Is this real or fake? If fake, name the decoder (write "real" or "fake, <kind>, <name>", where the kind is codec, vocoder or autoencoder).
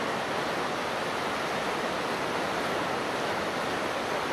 real